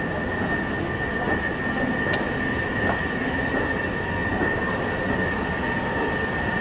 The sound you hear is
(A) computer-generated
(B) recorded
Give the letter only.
B